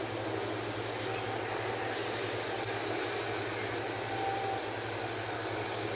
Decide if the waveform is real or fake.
real